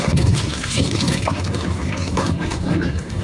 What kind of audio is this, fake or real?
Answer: fake